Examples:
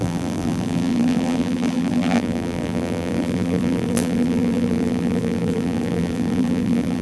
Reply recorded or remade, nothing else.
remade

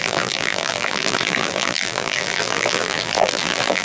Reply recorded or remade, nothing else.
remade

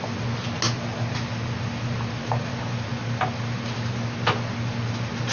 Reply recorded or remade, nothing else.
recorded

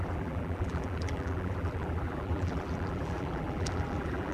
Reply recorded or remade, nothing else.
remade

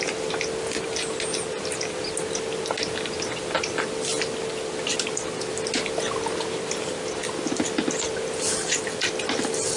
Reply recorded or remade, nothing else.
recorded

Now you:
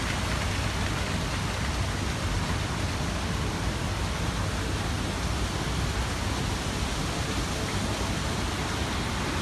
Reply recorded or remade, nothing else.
recorded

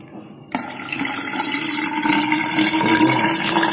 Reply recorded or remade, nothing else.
remade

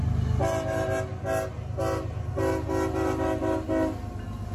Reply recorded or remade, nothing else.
recorded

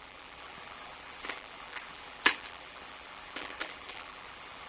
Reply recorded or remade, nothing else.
remade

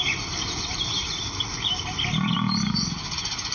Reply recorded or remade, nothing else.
recorded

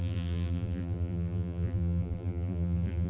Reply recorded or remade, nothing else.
remade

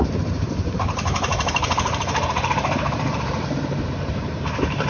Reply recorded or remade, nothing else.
remade